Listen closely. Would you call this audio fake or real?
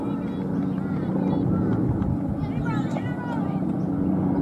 real